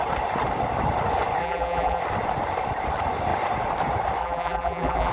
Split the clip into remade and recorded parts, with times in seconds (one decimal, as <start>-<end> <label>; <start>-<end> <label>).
0.0-1.4 recorded; 1.4-2.0 remade; 2.0-4.2 recorded; 4.2-5.1 remade